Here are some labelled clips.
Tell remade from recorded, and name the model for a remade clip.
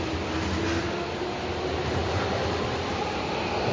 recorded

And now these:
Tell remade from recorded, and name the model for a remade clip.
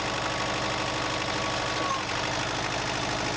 recorded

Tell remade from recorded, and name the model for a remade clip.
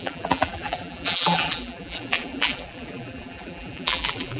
remade, vocoder, BigVGAN v2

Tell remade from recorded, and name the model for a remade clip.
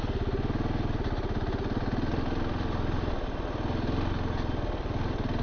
recorded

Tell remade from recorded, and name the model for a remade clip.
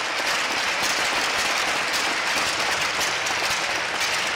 recorded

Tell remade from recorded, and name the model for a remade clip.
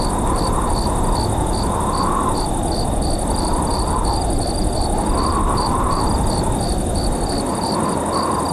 remade, vocoder, BigVGAN v2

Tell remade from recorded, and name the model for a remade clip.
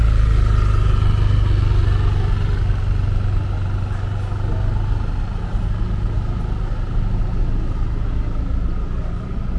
recorded